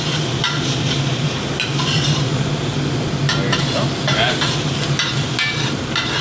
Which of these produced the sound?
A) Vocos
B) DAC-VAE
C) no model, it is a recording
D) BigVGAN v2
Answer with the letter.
C